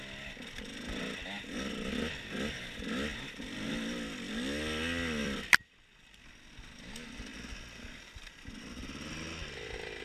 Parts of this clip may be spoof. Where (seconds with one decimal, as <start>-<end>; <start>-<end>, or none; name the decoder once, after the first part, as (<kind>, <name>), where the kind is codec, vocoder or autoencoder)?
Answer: 3.1-4.3 (vocoder, BigVGAN v2); 5.2-6.7